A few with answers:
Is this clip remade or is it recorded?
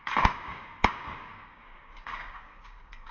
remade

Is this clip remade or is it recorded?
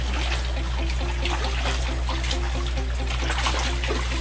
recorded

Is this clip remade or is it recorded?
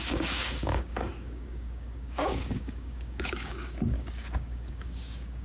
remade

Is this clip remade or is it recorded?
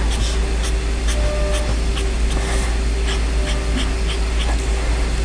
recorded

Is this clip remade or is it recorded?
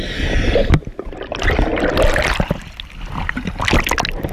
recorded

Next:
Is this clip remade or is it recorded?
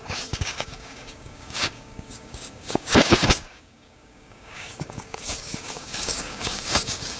remade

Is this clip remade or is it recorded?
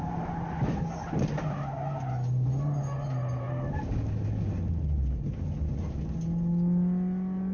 recorded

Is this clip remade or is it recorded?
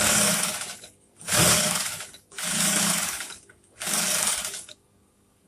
remade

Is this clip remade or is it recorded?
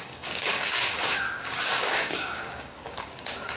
remade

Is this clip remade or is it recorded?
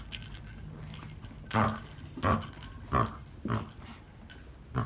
recorded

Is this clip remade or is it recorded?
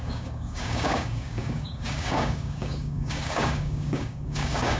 remade